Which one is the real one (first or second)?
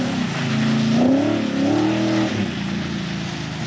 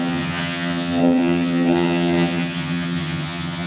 first